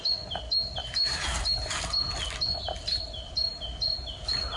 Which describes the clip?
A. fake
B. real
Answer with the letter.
B